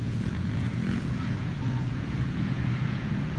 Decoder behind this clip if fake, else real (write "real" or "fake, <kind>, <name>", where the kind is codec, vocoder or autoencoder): fake, vocoder, Vocos